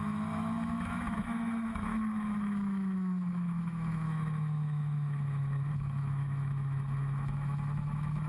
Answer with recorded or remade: remade